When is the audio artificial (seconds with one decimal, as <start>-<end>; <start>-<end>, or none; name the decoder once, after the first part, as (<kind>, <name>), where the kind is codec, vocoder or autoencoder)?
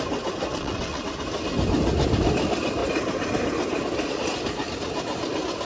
0.5-1.0 (vocoder, WaveNeXt)